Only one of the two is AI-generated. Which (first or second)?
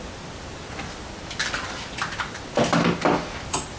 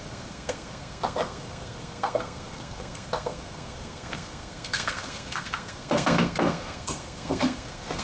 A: second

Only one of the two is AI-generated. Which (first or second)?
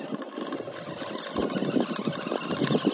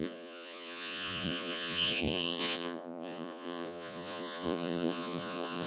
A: second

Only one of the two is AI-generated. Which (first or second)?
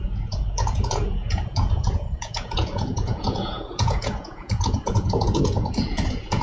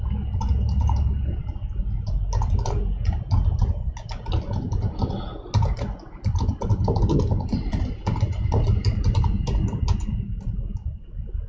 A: first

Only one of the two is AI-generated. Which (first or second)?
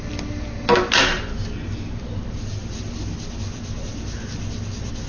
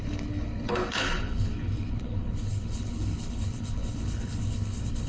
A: second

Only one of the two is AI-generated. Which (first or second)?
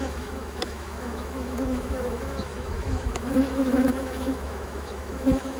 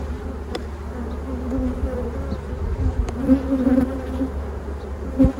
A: first